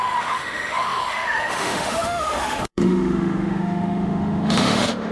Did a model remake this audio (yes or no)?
yes